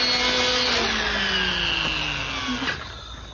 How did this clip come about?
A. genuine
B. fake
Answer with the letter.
A